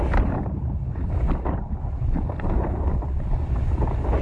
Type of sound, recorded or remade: recorded